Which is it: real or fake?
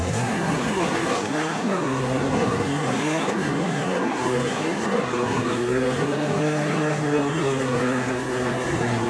fake